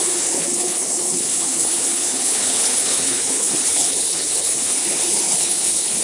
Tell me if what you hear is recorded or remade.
remade